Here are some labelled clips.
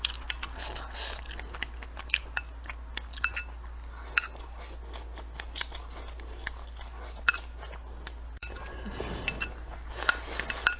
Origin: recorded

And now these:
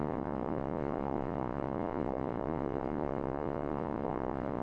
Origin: remade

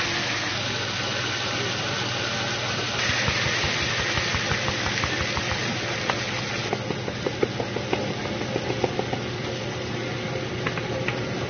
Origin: recorded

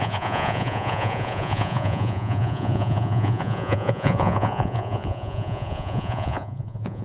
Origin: remade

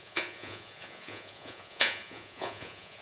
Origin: remade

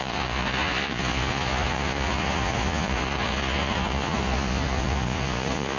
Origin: remade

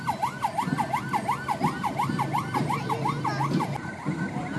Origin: recorded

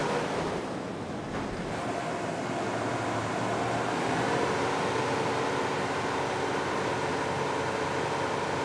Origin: recorded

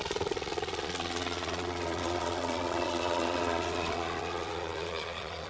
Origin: remade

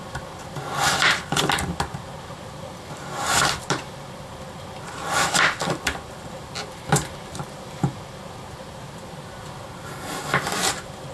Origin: recorded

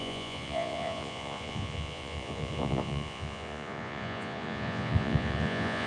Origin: remade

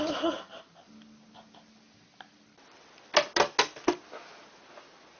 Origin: recorded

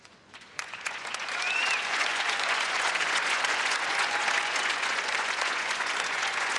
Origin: remade